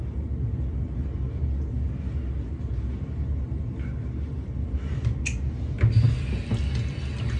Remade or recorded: recorded